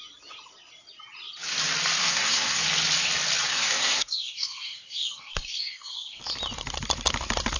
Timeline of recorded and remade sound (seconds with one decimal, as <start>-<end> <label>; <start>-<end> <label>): 0.0-2.0 recorded; 2.0-2.6 remade; 2.6-3.5 recorded; 3.5-6.2 remade; 6.2-7.6 recorded